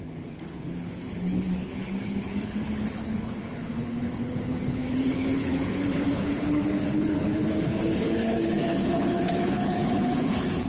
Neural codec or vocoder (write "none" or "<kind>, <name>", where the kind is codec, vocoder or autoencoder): codec, HILCodec